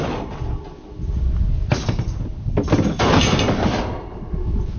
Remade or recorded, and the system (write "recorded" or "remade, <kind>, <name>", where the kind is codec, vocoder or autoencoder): recorded